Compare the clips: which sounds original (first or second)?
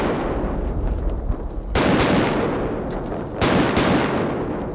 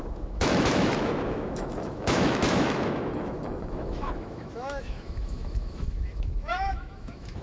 first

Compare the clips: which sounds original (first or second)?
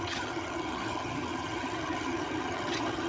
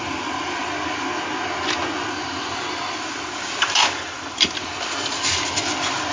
second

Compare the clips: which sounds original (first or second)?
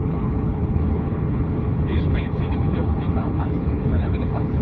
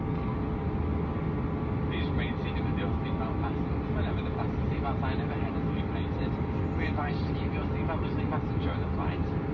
second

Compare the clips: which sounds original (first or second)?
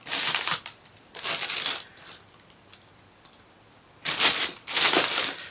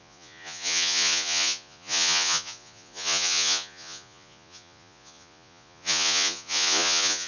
first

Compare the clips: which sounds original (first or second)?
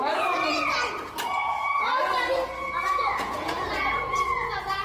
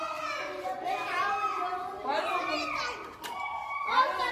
second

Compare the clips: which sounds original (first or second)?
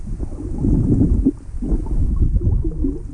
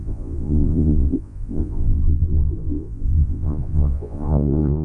first